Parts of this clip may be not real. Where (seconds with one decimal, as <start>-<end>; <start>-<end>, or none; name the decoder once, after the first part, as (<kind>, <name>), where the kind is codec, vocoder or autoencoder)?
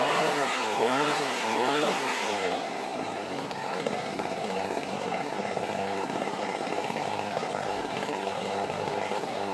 0.0-9.5 (codec, SNAC)